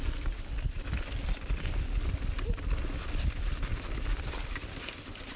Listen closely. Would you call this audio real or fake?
real